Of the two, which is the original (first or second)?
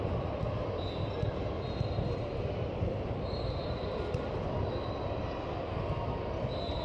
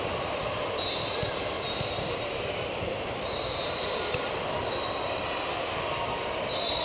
first